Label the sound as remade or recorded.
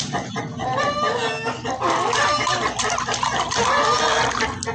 recorded